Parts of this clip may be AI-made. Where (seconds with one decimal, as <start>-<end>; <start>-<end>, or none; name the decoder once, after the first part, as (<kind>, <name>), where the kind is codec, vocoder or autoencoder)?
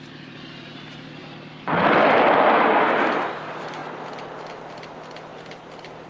5.3-6.1 (vocoder, BigVGAN v2)